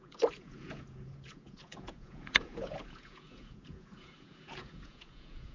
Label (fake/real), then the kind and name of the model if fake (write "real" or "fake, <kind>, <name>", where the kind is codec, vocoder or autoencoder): fake, vocoder, Vocos